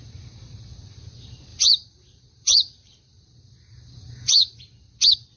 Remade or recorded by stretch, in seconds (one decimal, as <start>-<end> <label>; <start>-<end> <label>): 0.0-1.5 recorded; 1.5-4.6 remade; 4.6-5.4 recorded